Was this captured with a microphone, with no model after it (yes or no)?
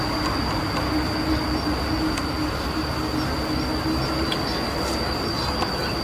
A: yes